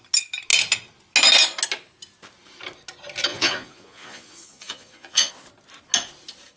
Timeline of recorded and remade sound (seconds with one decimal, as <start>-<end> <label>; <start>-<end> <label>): 0.0-3.3 recorded; 3.3-5.3 remade; 5.3-6.6 recorded